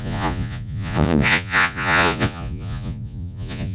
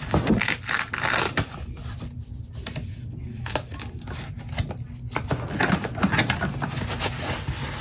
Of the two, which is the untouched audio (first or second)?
second